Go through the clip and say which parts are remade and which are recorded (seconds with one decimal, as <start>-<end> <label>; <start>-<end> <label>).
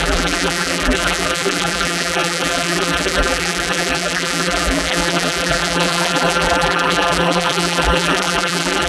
0.0-8.9 remade